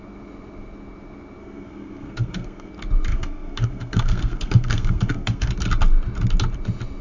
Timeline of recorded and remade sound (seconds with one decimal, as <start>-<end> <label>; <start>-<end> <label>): 0.0-1.4 recorded; 1.4-2.7 remade; 2.7-3.1 recorded; 3.1-5.5 remade; 5.5-7.0 recorded